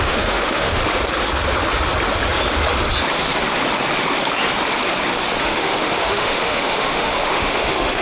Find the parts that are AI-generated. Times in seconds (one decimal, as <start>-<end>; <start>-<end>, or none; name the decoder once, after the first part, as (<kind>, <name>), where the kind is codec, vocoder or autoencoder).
0.0-0.8 (autoencoder, DAC-VAE); 5.4-8.0